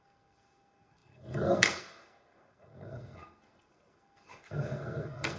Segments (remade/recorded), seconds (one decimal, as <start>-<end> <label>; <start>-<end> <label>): 0.0-5.4 remade